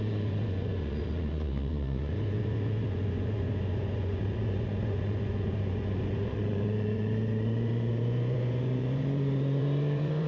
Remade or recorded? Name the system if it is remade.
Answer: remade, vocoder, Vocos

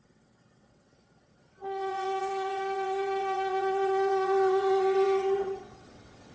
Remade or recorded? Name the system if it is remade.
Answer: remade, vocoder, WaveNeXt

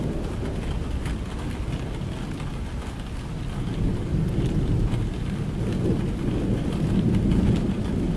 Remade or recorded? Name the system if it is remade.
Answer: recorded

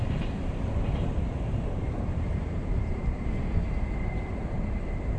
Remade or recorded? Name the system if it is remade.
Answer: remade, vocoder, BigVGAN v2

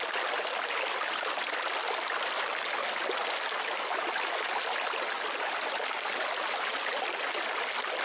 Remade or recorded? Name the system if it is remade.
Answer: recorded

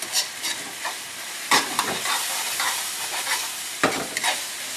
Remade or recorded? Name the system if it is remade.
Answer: recorded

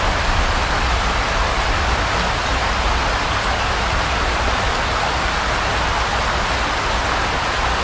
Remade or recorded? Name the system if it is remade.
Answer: recorded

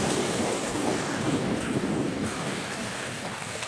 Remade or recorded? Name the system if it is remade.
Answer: remade, codec, DAC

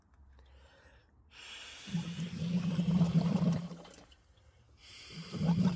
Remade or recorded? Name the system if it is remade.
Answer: remade, vocoder, BigVGAN v2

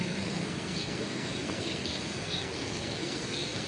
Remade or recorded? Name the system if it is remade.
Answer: remade, codec, SNAC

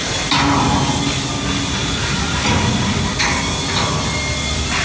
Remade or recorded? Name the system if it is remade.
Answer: recorded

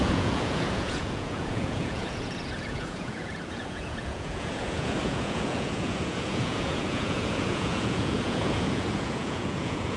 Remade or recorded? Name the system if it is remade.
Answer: remade, vocoder, Vocos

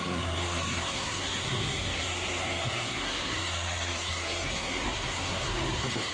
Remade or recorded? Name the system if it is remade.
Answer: remade, codec, SNAC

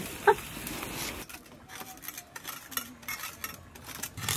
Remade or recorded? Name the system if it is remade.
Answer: recorded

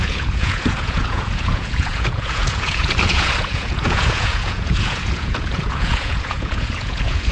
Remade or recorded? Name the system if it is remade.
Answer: remade, vocoder, Vocos